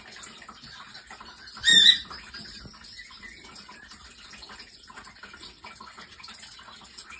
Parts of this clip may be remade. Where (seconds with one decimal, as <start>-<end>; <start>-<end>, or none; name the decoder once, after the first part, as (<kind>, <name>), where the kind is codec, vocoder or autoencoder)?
none